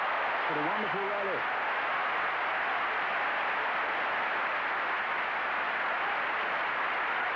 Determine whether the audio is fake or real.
real